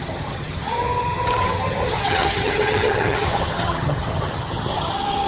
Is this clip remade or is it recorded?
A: remade